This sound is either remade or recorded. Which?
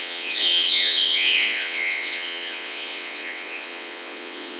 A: remade